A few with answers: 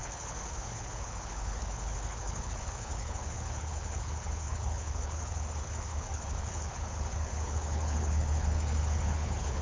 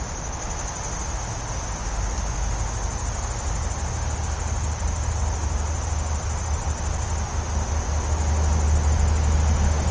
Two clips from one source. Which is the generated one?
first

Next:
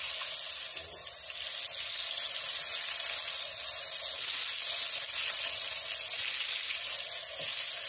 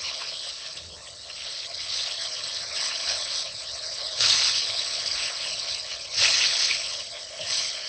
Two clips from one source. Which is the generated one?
second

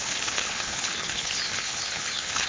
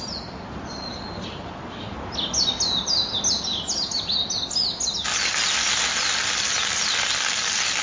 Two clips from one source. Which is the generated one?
first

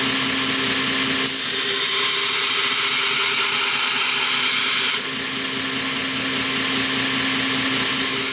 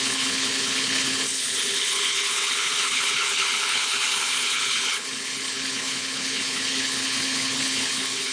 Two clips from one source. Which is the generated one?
second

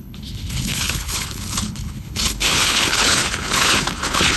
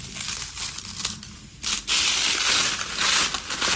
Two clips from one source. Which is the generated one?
first